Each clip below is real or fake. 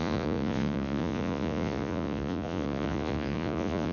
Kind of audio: fake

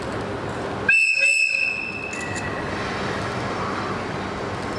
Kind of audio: real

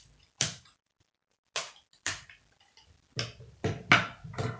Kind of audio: real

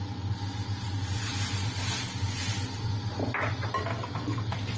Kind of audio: real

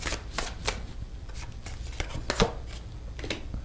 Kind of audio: real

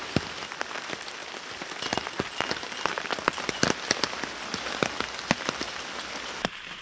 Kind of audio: real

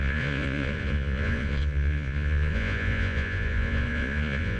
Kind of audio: fake